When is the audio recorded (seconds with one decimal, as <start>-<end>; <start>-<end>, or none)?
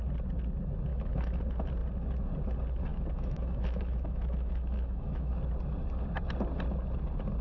0.0-0.9; 1.4-2.9; 5.3-7.4